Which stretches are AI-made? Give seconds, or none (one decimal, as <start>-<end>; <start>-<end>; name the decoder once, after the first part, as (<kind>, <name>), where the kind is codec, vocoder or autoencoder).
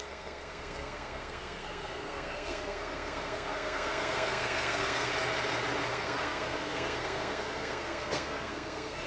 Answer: 0.0-5.1 (codec, SNAC); 5.9-9.1